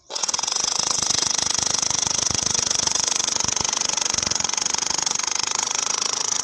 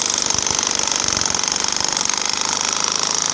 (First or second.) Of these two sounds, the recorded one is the second